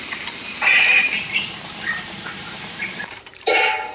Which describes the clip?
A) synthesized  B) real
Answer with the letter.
A